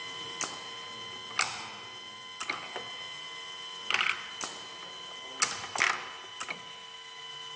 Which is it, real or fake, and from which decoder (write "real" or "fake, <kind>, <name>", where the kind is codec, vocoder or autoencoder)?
real